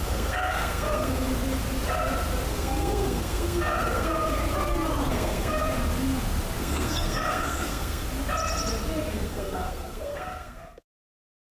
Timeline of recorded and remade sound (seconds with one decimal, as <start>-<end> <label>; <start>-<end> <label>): 0.0-1.3 remade; 1.3-2.5 recorded; 2.5-4.4 remade; 4.4-5.1 recorded; 5.1-5.6 remade; 5.6-6.6 recorded; 6.6-8.0 remade; 8.0-9.1 recorded; 9.1-11.5 remade